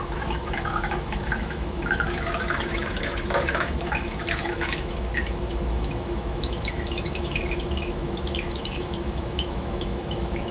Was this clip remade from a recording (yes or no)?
yes